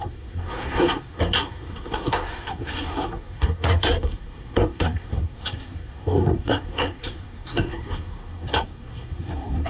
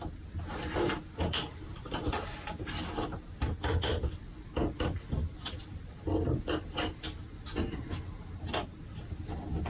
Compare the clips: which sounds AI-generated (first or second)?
first